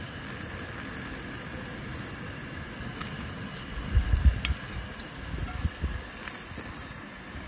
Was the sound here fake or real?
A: real